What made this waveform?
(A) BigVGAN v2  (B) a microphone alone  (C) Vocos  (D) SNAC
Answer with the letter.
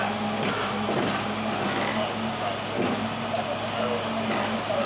B